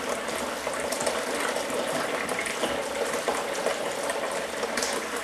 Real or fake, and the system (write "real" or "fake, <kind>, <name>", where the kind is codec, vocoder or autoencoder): real